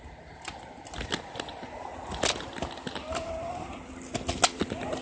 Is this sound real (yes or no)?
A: yes